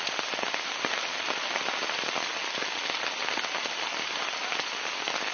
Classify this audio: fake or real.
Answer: real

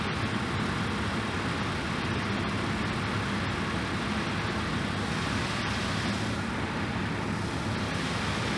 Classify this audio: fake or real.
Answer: real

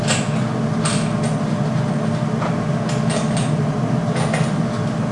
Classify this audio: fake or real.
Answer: real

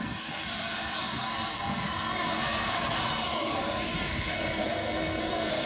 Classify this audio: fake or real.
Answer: fake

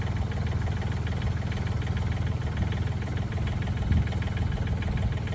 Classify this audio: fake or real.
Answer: real